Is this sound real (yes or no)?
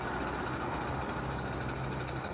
yes